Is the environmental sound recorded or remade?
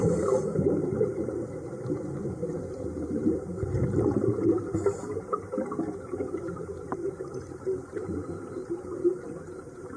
remade